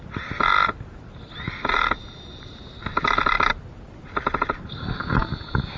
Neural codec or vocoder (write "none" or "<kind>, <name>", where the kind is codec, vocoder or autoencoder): none